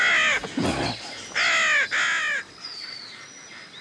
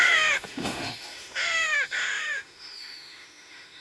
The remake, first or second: second